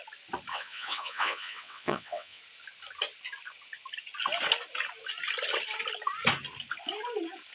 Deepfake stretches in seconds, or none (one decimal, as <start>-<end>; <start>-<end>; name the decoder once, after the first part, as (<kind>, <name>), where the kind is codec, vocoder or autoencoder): 0.5-2.4 (vocoder, WaveNeXt)